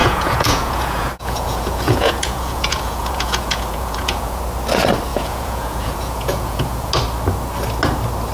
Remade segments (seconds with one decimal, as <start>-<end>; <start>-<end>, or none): 0.0-4.4; 5.1-6.9